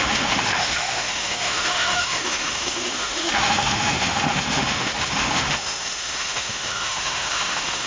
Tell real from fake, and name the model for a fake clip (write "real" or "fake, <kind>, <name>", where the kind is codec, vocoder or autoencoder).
fake, autoencoder, DAC-VAE